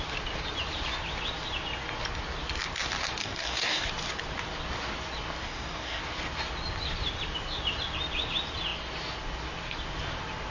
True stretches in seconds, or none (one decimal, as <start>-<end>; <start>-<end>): 0.0-3.2; 3.9-5.4; 6.0-10.5